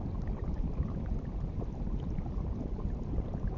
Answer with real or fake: fake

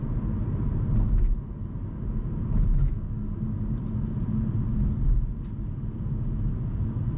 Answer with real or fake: real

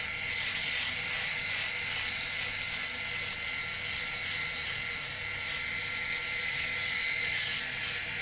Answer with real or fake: real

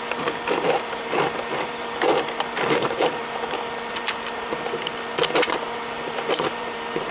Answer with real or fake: fake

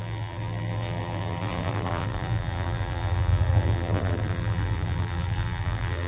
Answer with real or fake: fake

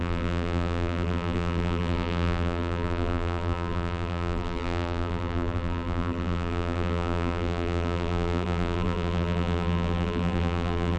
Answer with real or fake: fake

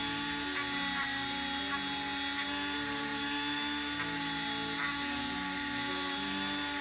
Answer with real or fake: real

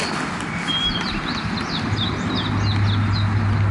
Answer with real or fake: real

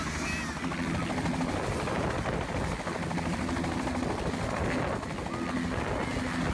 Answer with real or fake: real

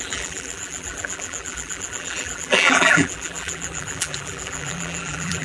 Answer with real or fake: fake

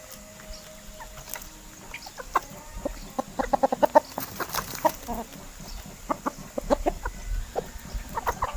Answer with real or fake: real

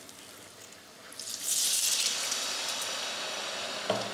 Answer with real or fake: real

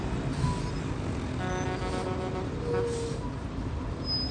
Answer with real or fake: real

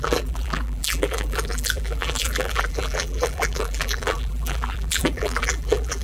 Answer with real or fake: fake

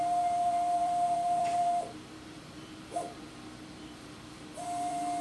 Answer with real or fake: fake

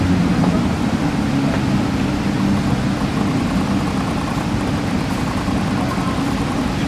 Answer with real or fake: real